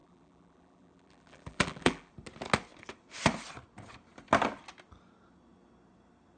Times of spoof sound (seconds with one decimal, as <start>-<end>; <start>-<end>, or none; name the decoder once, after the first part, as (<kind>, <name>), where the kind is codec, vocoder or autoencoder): 0.0-2.1 (vocoder, BigVGAN v2)